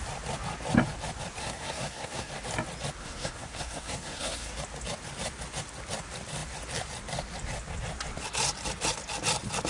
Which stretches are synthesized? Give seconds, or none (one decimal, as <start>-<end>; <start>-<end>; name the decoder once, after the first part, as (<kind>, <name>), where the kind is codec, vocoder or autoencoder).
1.4-2.3 (codec, SNAC); 3.0-4.6